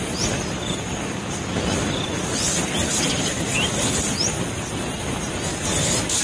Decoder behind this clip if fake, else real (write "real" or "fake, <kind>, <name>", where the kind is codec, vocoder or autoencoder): real